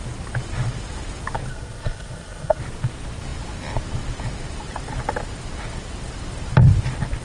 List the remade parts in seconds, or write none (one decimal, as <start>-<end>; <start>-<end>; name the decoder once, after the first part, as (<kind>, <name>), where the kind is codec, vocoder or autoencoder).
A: 1.5-2.6 (codec, SNAC)